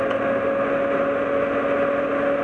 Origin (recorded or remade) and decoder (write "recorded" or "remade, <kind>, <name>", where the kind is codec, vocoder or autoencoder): recorded